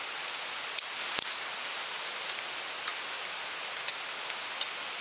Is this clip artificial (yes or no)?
no